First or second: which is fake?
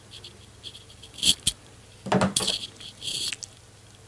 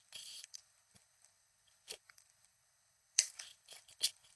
second